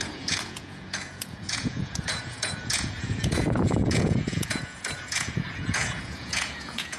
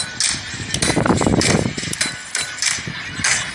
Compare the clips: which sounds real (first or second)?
second